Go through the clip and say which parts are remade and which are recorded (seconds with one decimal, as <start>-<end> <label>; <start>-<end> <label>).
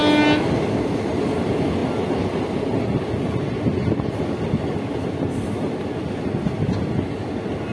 0.0-7.7 recorded